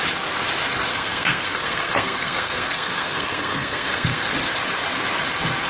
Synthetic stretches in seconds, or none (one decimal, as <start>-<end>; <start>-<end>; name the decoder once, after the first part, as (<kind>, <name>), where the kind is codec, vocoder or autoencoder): 0.9-4.3 (codec, SNAC)